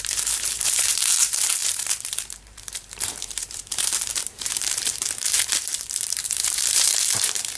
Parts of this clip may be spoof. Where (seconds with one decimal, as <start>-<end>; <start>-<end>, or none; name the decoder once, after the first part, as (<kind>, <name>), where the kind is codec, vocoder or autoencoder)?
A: 0.0-7.6 (vocoder, BigVGAN v2)